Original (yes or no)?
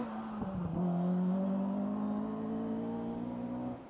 yes